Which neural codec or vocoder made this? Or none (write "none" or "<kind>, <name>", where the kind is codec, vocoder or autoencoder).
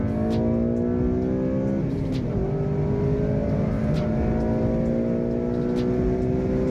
none